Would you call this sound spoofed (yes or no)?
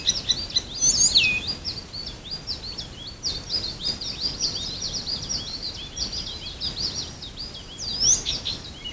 no